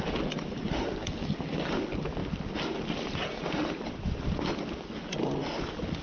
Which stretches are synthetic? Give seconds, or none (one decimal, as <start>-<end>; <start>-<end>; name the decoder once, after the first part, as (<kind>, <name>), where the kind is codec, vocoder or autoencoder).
none